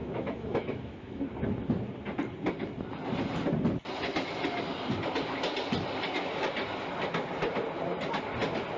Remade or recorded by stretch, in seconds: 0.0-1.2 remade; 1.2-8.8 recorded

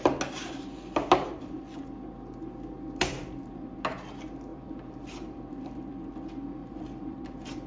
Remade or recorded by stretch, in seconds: 0.0-4.5 recorded; 4.5-6.1 remade; 6.1-6.6 recorded; 6.6-7.7 remade